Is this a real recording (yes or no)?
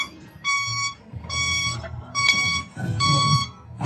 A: no